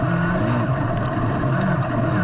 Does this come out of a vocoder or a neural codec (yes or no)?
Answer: no